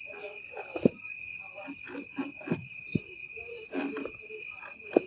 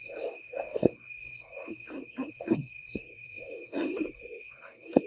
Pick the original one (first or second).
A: first